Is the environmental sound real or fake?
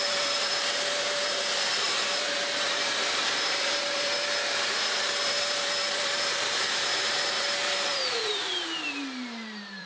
fake